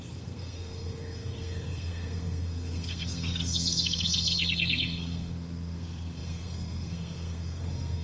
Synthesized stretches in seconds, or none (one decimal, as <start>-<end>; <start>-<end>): 0.0-8.0